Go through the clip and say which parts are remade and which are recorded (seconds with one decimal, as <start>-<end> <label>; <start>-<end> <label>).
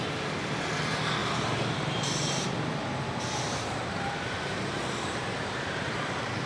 0.0-1.2 recorded; 1.2-2.0 remade; 2.0-2.8 recorded; 2.8-6.5 remade